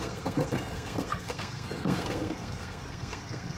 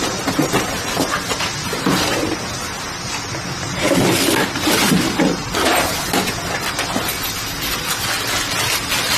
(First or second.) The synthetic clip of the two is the first